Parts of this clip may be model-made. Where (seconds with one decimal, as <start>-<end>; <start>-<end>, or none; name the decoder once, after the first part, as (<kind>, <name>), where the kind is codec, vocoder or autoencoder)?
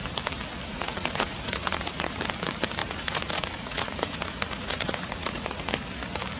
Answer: 0.7-2.2 (vocoder, Vocos); 2.8-5.7